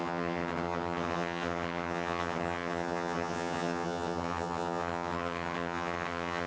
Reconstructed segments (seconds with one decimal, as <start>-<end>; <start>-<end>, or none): 0.0-6.5